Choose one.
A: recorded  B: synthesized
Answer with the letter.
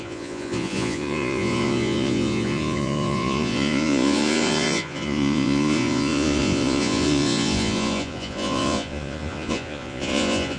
B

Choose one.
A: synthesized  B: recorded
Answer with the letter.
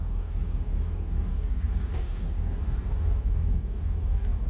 A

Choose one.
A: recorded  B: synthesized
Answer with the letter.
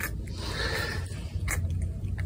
A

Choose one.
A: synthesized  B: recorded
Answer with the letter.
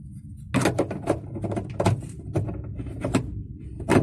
B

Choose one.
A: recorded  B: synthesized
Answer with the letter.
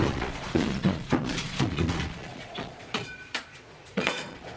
B